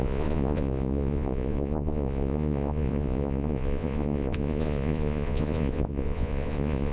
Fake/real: fake